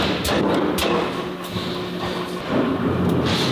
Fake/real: real